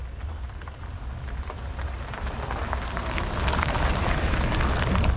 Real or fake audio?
fake